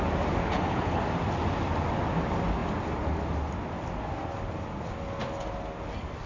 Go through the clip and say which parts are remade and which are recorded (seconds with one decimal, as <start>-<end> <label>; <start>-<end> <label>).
0.0-0.4 recorded; 0.4-1.0 remade; 1.0-6.3 recorded